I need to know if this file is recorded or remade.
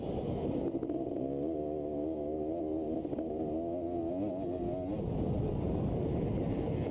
recorded